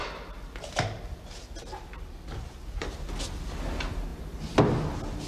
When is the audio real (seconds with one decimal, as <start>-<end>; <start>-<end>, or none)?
3.2-5.3